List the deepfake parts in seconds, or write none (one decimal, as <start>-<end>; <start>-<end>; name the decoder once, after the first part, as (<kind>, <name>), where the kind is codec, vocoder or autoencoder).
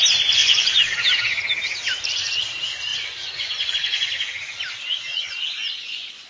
0.4-0.9 (vocoder, Vocos); 2.9-3.7; 5.1-6.3